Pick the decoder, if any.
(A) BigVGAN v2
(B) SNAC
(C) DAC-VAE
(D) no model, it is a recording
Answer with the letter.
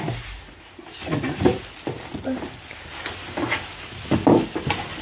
D